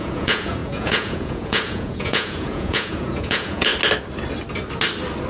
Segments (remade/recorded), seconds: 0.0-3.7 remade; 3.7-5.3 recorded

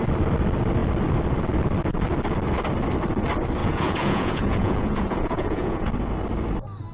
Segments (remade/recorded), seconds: 0.0-3.6 recorded; 3.6-5.9 remade; 5.9-6.9 recorded

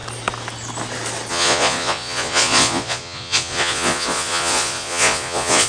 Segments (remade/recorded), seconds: 0.0-1.3 recorded; 1.3-5.7 remade

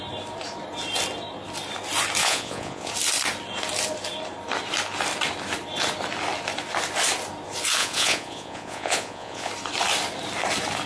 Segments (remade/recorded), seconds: 0.0-2.2 recorded; 2.2-2.9 remade; 2.9-7.8 recorded; 7.8-9.5 remade; 9.5-10.9 recorded

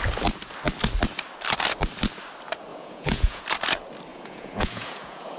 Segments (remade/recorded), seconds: 0.0-2.7 recorded; 2.7-3.4 remade; 3.4-4.1 recorded; 4.1-5.4 remade

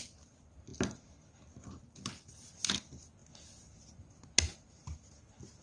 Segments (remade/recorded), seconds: 0.0-5.6 recorded

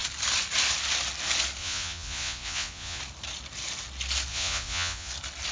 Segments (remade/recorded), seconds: 0.0-1.6 recorded; 1.6-3.0 remade; 3.0-4.3 recorded; 4.3-5.1 remade; 5.1-5.5 recorded